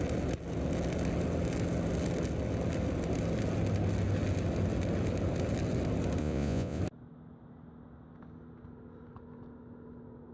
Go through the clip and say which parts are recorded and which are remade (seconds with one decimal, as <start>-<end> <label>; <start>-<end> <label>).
0.0-6.2 recorded; 6.2-6.8 remade; 6.8-10.3 recorded